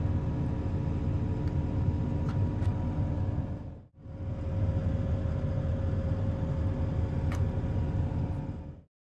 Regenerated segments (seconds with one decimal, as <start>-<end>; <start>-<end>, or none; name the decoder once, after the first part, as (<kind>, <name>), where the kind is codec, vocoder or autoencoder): none